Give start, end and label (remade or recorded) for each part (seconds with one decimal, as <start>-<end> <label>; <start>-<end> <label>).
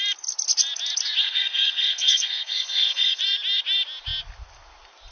0.0-1.2 recorded; 1.2-3.2 remade; 3.2-5.1 recorded